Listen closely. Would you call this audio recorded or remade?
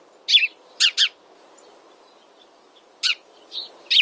recorded